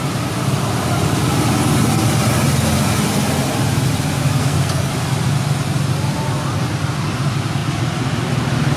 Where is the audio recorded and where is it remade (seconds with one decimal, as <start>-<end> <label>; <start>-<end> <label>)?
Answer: 0.0-4.4 recorded; 4.4-4.9 remade; 4.9-8.8 recorded